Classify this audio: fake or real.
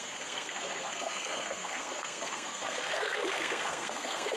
fake